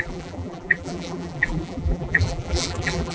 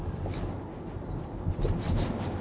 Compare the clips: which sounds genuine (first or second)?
second